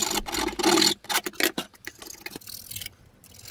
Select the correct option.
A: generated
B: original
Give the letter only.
B